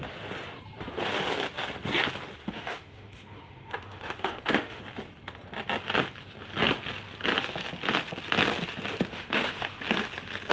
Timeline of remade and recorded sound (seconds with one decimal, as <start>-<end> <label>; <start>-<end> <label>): 0.0-2.4 recorded; 2.4-4.8 remade; 4.8-9.1 recorded; 9.1-9.8 remade; 9.8-10.5 recorded